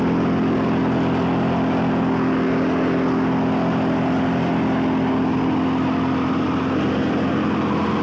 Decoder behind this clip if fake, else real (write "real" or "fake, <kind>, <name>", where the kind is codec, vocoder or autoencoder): real